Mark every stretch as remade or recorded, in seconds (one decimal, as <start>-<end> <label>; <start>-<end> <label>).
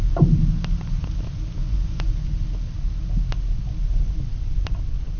0.0-1.6 recorded; 1.6-2.1 remade; 2.1-5.2 recorded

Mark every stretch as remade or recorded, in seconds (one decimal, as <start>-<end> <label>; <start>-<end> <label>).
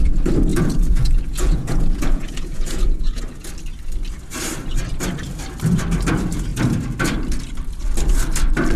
0.0-0.5 recorded; 0.5-3.2 remade; 3.2-8.8 recorded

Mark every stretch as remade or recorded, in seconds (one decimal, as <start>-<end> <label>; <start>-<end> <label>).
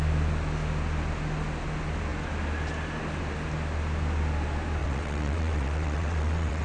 0.0-4.8 recorded; 4.8-6.6 remade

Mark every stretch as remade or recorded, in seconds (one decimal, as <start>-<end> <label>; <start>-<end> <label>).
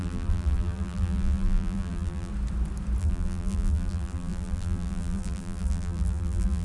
0.0-2.3 remade; 2.3-3.0 recorded; 3.0-6.6 remade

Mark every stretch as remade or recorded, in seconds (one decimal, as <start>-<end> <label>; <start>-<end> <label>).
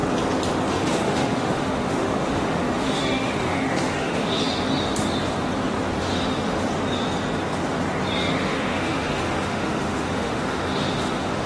0.0-0.7 recorded; 0.7-4.4 remade; 4.4-6.0 recorded; 6.0-6.7 remade; 6.7-8.3 recorded; 8.3-11.5 remade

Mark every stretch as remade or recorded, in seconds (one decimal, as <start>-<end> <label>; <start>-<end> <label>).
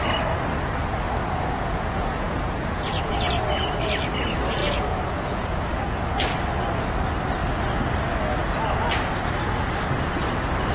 0.0-1.2 recorded; 1.2-3.1 remade; 3.1-4.6 recorded; 4.6-6.0 remade; 6.0-10.7 recorded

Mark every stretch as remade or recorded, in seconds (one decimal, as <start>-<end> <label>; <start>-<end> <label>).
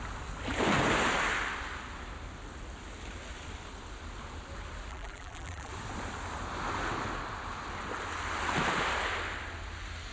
0.0-4.9 recorded; 4.9-5.7 remade; 5.7-10.1 recorded